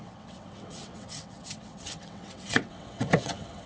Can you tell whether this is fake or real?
fake